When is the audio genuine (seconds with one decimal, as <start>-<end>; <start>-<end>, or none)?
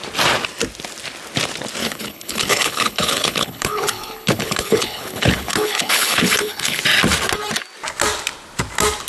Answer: 0.0-1.8; 6.8-9.1